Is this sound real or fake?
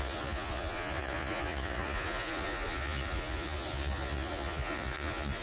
fake